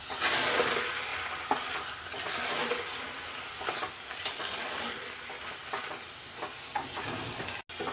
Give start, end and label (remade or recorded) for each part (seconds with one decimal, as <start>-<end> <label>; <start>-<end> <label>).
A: 0.0-7.9 recorded